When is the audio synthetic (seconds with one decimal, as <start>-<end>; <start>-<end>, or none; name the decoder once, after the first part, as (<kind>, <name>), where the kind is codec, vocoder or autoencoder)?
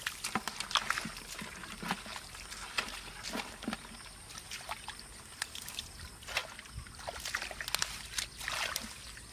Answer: none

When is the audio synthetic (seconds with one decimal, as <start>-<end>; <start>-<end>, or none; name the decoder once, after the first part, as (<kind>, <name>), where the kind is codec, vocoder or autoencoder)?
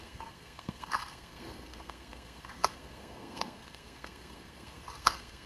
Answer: 0.0-5.5 (codec, SNAC)